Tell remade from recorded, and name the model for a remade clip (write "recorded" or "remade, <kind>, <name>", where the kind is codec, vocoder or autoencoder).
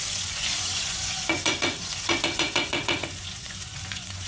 remade, vocoder, Vocos